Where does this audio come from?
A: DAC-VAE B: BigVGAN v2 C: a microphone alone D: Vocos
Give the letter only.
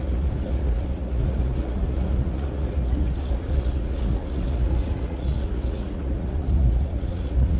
D